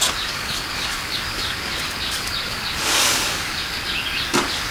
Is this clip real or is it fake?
fake